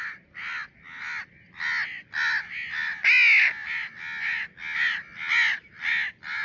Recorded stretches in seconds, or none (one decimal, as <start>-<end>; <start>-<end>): 0.0-6.4